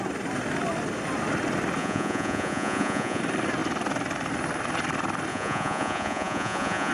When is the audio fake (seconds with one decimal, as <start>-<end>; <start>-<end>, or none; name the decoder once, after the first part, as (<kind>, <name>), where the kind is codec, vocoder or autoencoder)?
1.8-3.2 (vocoder, Vocos); 5.3-6.9